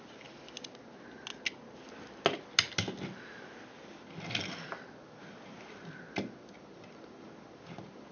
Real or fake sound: real